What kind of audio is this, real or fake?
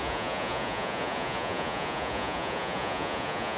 fake